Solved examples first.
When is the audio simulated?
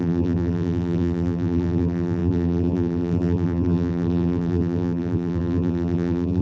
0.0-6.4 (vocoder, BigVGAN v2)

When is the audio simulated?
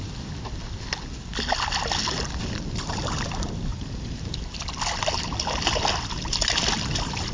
3.7-4.2 (vocoder, BigVGAN v2)